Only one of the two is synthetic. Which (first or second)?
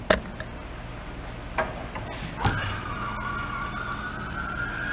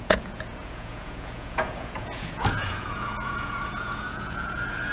second